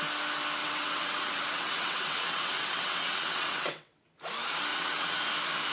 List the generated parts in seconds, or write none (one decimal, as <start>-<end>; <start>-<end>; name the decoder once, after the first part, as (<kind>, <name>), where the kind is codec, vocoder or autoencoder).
0.6-4.0 (vocoder, WaveNeXt); 4.7-5.2